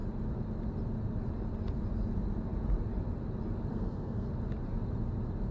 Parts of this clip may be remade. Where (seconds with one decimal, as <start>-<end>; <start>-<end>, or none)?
3.7-4.3